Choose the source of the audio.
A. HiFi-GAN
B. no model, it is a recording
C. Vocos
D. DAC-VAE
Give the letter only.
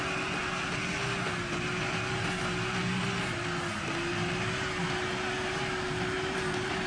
B